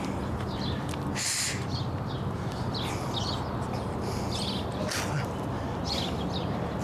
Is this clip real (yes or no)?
yes